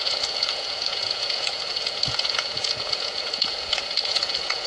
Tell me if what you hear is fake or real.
fake